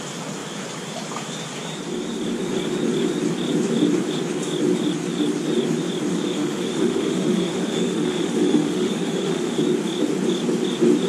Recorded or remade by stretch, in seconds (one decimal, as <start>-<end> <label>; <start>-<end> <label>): 0.0-6.1 recorded; 6.1-9.6 remade; 9.6-11.1 recorded